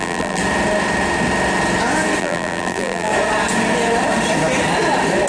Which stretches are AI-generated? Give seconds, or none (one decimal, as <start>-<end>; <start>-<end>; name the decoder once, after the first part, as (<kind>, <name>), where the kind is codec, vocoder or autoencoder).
0.0-0.4 (vocoder, BigVGAN v2); 2.2-3.1